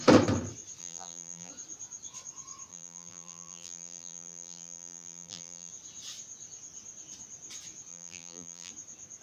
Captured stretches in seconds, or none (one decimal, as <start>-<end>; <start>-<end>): 0.0-0.8; 1.5-2.7; 5.7-7.9; 8.7-9.2